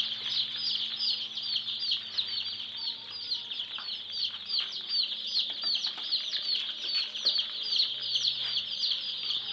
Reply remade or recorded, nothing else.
recorded